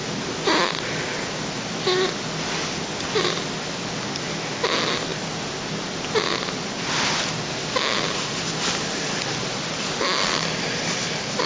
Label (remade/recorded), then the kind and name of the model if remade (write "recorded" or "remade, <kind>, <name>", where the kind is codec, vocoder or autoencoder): recorded